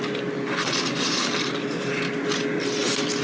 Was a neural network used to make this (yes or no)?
no